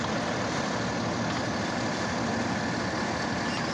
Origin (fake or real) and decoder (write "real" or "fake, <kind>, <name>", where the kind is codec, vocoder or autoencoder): real